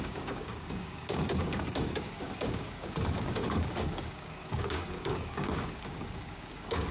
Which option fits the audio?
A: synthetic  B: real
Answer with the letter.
A